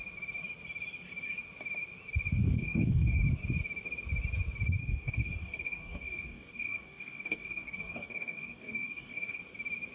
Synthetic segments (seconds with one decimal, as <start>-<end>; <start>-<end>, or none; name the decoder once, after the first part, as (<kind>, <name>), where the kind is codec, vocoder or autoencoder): 2.4-3.2 (codec, DAC); 4.8-9.4